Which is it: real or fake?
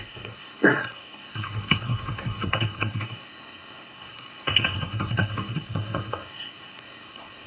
fake